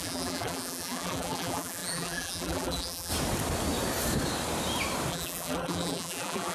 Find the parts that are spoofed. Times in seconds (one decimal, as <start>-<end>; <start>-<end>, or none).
0.0-3.1; 5.1-6.5